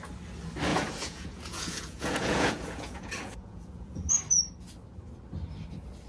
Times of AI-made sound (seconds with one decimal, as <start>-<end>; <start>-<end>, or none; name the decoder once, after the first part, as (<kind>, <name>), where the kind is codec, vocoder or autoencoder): 0.7-4.1 (vocoder, Vocos)

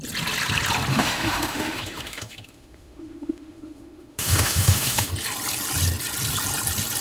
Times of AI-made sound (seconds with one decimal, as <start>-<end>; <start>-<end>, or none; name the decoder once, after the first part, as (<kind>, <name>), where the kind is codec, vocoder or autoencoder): 0.9-5.1 (autoencoder, DAC-VAE)

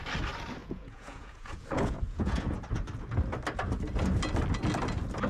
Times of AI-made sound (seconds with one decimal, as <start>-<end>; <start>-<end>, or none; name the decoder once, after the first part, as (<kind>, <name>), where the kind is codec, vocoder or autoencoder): 0.6-2.5 (vocoder, Vocos)

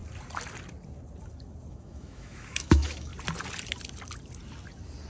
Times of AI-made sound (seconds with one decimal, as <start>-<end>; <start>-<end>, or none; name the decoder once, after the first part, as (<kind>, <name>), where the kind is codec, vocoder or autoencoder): 1.7-3.1 (autoencoder, DAC-VAE)

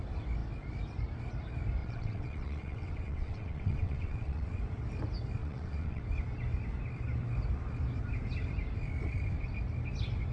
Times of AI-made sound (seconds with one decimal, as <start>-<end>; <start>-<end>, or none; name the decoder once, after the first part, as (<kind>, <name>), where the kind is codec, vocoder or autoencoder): 1.8-4.6 (vocoder, WaveNeXt); 5.4-6.0